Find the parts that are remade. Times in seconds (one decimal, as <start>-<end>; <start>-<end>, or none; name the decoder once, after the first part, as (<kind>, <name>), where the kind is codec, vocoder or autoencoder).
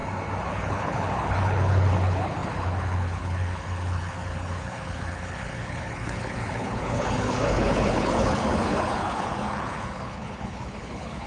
0.5-11.3 (codec, HILCodec)